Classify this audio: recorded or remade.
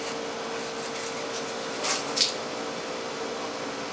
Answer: recorded